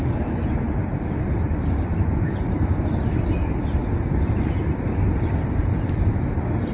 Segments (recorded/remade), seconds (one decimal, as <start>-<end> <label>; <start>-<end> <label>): 0.0-3.8 remade; 3.8-4.3 recorded; 4.3-6.7 remade

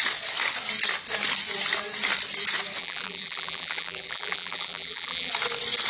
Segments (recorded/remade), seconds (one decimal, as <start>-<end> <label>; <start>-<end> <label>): 0.0-2.8 recorded; 2.8-5.3 remade; 5.3-5.9 recorded

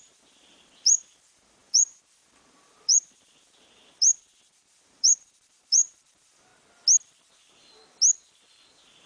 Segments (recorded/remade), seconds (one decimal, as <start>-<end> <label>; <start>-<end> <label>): 0.0-6.5 remade; 6.5-7.3 recorded; 7.3-7.8 remade; 7.8-8.7 recorded; 8.7-9.1 remade